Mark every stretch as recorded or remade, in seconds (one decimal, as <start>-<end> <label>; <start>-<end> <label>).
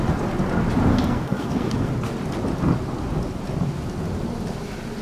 0.0-0.9 recorded; 0.9-1.9 remade; 1.9-5.0 recorded